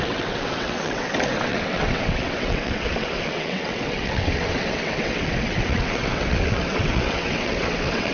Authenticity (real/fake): fake